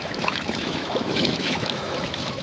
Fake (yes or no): yes